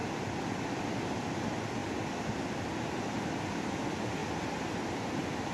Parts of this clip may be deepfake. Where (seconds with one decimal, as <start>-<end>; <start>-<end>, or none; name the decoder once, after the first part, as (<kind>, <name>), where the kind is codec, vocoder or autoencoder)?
0.0-0.9 (vocoder, BigVGAN v2); 1.8-3.3